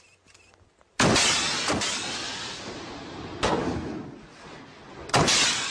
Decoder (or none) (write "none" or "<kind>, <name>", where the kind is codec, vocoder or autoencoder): none